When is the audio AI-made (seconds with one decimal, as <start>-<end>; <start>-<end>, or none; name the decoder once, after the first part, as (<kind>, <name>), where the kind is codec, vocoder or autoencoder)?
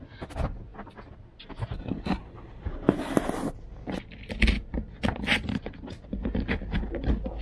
none